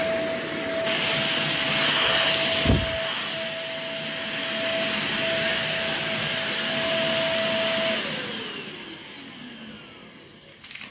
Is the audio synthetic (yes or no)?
no